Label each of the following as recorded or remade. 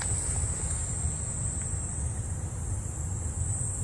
recorded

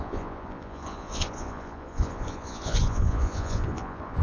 remade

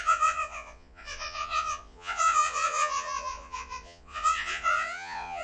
remade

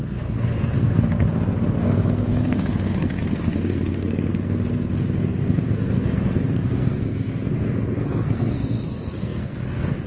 remade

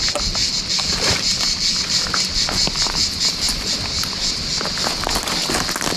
recorded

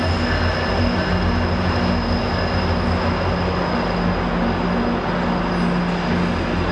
recorded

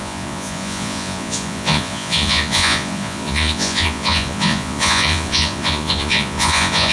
remade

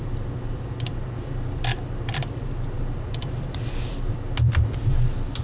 remade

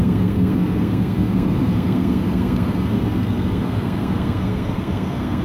remade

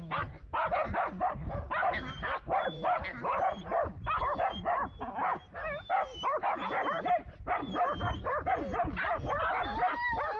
recorded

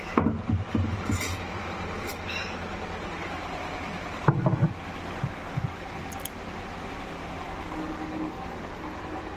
recorded